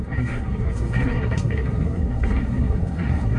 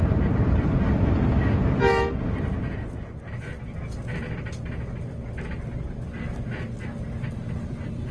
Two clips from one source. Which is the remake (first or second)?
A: first